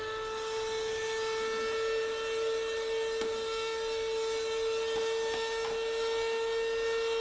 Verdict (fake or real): real